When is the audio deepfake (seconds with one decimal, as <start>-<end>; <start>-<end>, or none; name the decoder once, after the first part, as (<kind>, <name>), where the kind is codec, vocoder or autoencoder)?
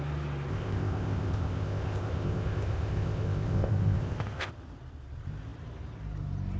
0.5-4.5 (codec, ZipCodec)